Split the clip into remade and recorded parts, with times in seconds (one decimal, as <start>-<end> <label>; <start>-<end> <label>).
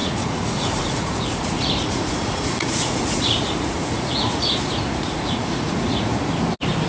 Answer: 0.0-6.1 remade; 6.1-6.9 recorded